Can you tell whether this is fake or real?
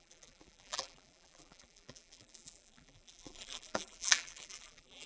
fake